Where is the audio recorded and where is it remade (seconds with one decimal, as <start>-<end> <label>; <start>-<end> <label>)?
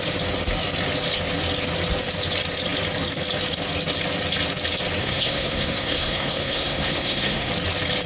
0.0-5.0 recorded; 5.0-7.5 remade; 7.5-8.1 recorded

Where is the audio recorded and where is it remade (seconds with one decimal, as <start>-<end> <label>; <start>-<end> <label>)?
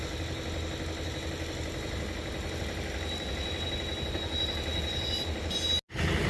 0.0-6.3 recorded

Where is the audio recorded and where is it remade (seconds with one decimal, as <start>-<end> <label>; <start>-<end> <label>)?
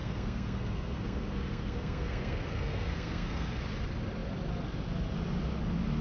0.0-3.6 remade; 3.6-6.0 recorded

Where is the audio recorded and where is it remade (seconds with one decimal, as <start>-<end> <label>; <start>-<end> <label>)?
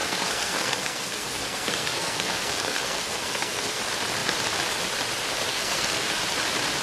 0.0-3.8 remade; 3.8-5.5 recorded; 5.5-6.2 remade; 6.2-6.8 recorded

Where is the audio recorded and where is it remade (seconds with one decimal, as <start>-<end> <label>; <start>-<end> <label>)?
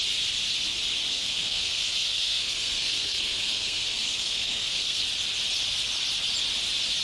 0.0-1.1 recorded; 1.1-5.0 remade; 5.0-7.0 recorded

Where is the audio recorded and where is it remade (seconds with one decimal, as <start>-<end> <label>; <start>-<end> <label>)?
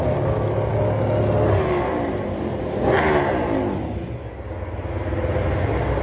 0.0-6.0 recorded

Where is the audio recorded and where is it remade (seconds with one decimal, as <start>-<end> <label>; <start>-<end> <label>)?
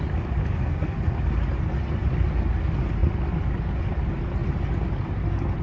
0.0-0.4 recorded; 0.4-1.2 remade; 1.2-5.6 recorded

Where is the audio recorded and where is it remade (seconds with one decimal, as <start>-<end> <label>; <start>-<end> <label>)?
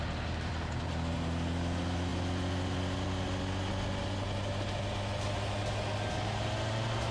0.0-7.1 recorded